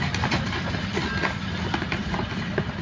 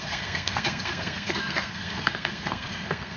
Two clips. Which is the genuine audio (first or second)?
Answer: first